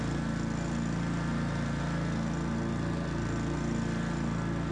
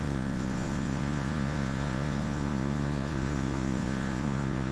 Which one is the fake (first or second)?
second